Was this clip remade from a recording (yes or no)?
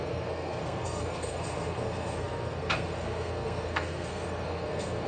yes